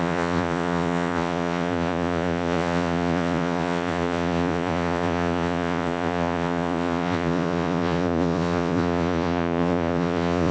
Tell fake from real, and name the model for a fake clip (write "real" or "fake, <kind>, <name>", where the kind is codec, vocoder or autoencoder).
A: fake, vocoder, Vocos